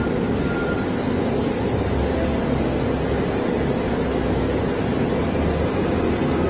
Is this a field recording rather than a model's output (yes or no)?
yes